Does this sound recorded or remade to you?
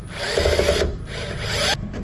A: recorded